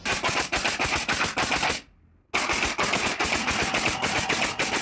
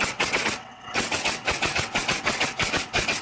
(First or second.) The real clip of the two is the first